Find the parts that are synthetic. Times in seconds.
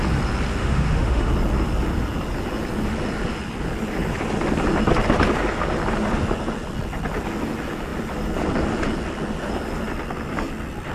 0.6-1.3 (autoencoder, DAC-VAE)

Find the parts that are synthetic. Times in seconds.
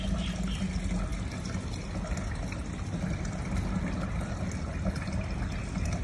none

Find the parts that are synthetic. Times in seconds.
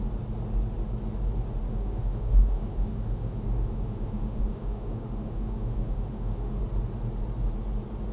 1.7-6.6 (autoencoder, DAC-VAE)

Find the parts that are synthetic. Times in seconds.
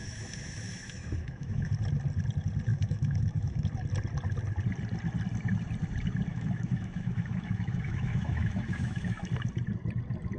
0.0-1.7 (autoencoder, DAC-VAE); 2.7-3.6; 6.3-9.3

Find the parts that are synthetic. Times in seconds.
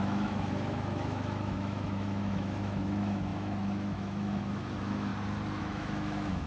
0.0-5.1 (autoencoder, DAC-VAE); 5.6-6.5